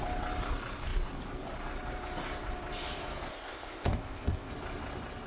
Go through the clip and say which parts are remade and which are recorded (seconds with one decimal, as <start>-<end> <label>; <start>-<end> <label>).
0.0-3.3 recorded; 3.3-4.5 remade; 4.5-5.3 recorded